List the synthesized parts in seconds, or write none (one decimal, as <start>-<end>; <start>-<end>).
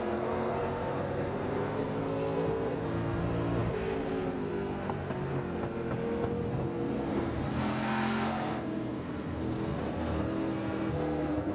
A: 0.0-5.3; 6.5-11.5